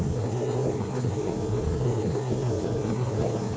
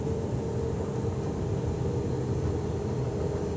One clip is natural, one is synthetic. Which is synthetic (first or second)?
first